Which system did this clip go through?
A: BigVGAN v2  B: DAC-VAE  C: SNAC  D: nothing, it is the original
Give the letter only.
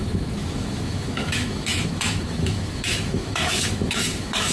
B